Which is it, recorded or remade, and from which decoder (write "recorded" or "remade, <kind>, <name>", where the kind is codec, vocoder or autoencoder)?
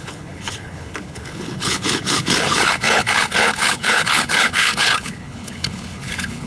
remade, codec, HILCodec